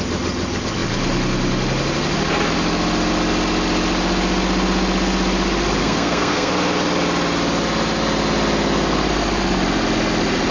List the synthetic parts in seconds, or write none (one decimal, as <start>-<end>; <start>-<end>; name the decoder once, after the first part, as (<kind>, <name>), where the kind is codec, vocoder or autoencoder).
5.8-6.5 (codec, SNAC)